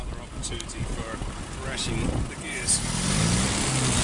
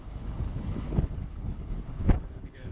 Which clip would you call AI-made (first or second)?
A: second